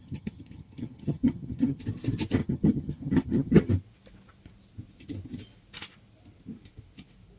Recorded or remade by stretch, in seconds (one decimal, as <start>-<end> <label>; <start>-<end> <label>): 0.0-1.8 remade; 1.8-2.4 recorded; 2.4-3.7 remade; 3.7-7.4 recorded